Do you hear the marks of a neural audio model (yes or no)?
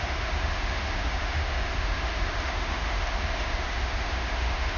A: yes